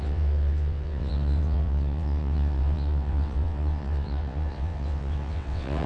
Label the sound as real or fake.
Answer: fake